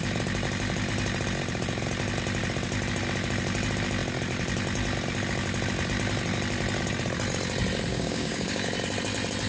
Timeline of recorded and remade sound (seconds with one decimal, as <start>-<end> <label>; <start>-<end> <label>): 0.0-7.9 recorded; 7.9-8.7 remade; 8.7-9.5 recorded